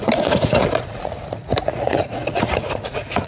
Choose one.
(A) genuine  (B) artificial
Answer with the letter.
B